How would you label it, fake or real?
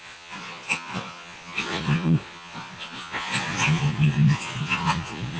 fake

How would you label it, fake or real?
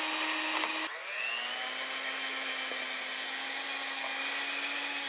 real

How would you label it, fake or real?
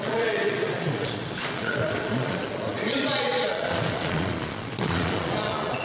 fake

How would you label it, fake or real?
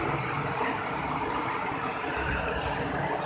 real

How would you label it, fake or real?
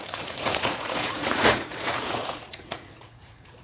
fake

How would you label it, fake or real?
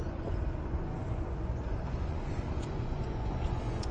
fake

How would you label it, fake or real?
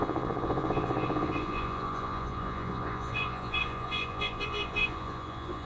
fake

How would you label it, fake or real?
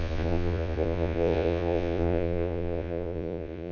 fake